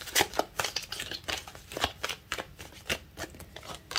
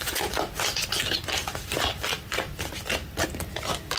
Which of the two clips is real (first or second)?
second